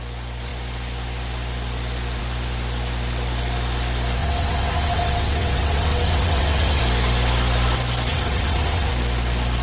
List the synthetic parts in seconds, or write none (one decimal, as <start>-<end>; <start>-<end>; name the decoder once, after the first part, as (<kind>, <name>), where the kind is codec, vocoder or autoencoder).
4.2-6.8 (vocoder, WaveNeXt); 8.1-8.9